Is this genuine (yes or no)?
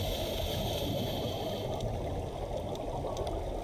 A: yes